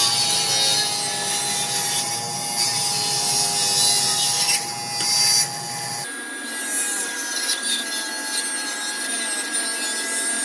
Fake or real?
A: real